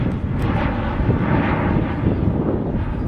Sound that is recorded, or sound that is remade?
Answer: recorded